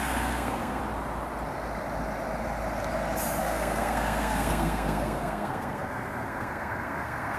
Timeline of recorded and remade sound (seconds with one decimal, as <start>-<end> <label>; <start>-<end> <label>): 0.0-0.8 remade; 0.8-3.4 recorded; 3.4-7.4 remade